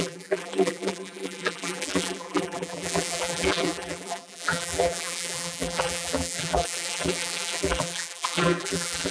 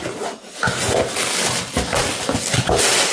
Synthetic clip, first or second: first